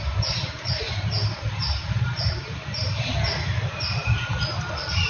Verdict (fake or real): fake